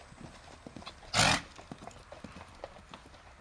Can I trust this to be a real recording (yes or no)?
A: yes